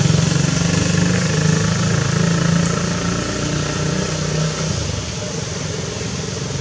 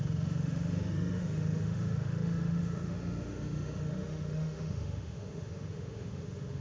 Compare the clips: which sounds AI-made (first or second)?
second